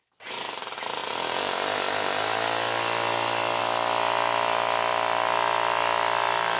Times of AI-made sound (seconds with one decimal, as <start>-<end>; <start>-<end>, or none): none